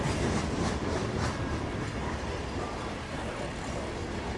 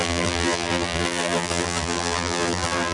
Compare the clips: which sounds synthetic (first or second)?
second